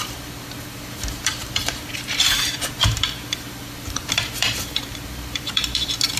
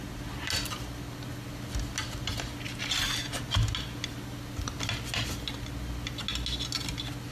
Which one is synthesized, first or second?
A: first